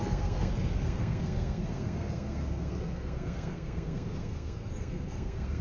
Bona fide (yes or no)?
no